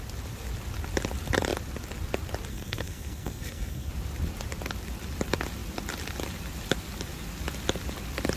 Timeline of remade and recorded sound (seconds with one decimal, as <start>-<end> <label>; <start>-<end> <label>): 0.0-2.5 recorded; 2.5-3.9 remade; 3.9-8.4 recorded